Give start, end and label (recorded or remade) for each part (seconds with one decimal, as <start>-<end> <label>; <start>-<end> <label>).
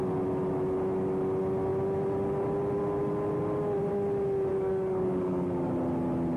0.0-4.5 recorded; 4.5-5.7 remade; 5.7-6.4 recorded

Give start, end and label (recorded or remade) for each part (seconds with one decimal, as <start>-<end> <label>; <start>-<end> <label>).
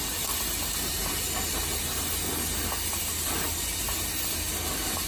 0.0-5.1 recorded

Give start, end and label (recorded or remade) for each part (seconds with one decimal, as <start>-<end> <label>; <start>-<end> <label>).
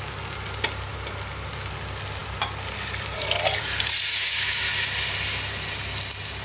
0.0-4.1 recorded; 4.1-4.6 remade; 4.6-6.4 recorded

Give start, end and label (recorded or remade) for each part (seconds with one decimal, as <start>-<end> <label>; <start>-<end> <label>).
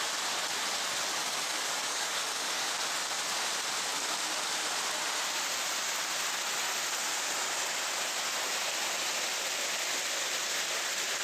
0.0-1.2 recorded; 1.2-2.7 remade; 2.7-11.2 recorded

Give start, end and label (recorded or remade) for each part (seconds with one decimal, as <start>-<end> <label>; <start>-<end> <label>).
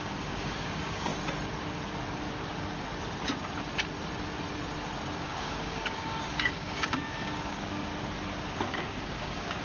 0.0-1.1 remade; 1.1-5.2 recorded; 5.2-7.9 remade; 7.9-8.7 recorded; 8.7-9.6 remade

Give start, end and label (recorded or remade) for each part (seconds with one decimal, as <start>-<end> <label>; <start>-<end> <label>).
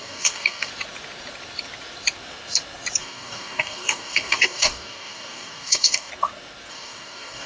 0.0-0.7 remade; 0.7-3.0 recorded; 3.0-6.1 remade; 6.1-6.7 recorded; 6.7-7.5 remade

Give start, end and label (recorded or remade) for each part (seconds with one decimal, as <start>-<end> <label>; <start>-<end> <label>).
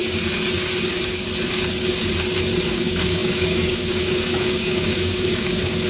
0.0-2.7 recorded; 2.7-5.9 remade